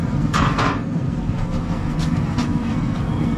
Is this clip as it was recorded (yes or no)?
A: no